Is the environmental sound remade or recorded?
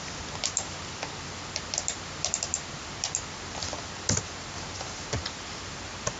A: recorded